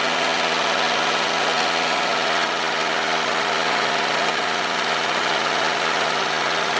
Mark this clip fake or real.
real